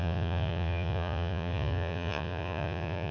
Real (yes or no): no